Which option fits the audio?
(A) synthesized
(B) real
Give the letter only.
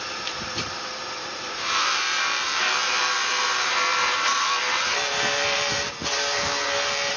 A